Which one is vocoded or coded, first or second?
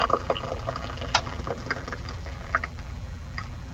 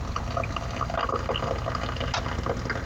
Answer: first